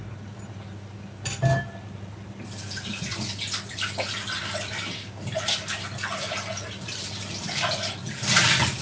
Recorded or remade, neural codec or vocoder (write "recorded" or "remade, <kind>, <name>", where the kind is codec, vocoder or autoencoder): recorded